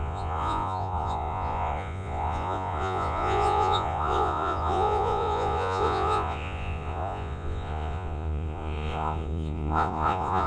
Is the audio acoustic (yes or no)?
no